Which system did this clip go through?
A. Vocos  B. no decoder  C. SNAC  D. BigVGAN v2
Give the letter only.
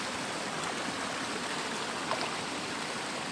B